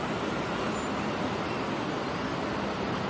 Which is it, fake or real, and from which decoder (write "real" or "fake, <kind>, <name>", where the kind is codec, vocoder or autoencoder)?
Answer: real